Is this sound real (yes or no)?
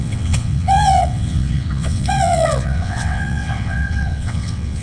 no